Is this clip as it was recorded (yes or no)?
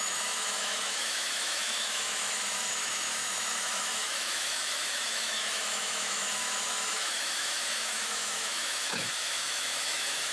no